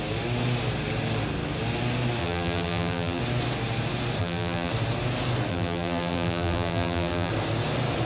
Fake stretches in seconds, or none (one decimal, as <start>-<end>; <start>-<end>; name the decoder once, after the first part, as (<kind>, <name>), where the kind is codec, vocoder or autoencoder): 2.2-3.2 (vocoder, BigVGAN v2); 4.2-4.7; 5.5-7.3